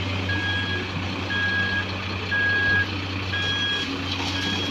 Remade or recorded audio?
recorded